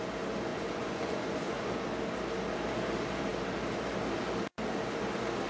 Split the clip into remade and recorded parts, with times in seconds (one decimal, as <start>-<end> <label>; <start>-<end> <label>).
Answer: 0.0-0.5 recorded; 0.5-1.8 remade; 1.8-5.5 recorded